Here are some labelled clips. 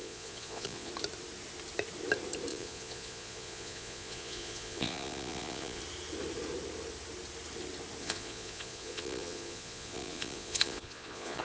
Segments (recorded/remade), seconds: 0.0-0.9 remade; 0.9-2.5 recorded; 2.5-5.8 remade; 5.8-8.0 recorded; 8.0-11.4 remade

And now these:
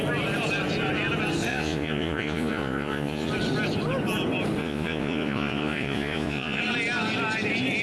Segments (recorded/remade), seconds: 0.0-1.5 recorded; 1.5-3.3 remade; 3.3-4.6 recorded; 4.6-6.6 remade; 6.6-7.8 recorded

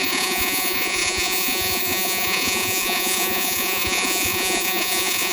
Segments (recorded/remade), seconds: 0.0-5.3 remade

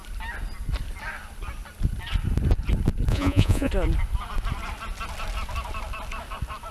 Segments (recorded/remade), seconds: 0.0-3.1 recorded; 3.1-3.7 remade; 3.7-6.7 recorded

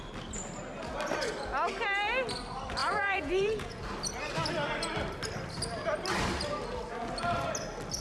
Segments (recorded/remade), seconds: 0.0-2.8 recorded; 2.8-3.8 remade; 3.8-8.0 recorded